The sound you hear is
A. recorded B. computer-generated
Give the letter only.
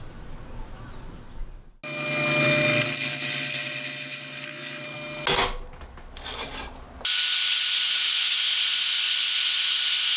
A